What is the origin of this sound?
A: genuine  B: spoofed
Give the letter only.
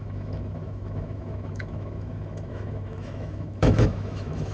B